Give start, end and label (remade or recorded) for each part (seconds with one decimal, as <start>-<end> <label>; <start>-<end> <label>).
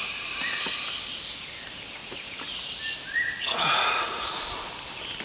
0.0-2.0 recorded; 2.0-2.7 remade; 2.7-3.4 recorded; 3.4-4.4 remade; 4.4-5.2 recorded